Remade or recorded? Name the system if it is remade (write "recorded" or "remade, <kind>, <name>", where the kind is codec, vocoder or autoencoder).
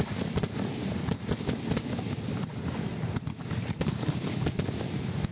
recorded